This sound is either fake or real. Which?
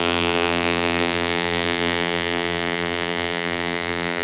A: fake